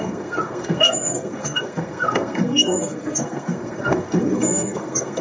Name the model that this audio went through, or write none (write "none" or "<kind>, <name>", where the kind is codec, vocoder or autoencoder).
codec, SNAC